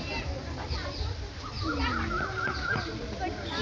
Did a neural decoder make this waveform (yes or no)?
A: no